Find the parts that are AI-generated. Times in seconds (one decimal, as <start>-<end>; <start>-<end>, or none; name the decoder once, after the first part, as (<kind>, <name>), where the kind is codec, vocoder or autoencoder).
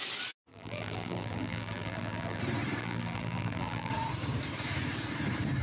0.5-2.4 (vocoder, BigVGAN v2); 2.8-3.9